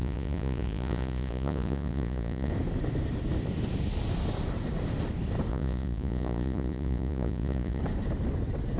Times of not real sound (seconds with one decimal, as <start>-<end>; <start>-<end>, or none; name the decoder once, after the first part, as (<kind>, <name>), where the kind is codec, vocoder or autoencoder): 0.0-2.5 (vocoder, Vocos); 5.5-7.8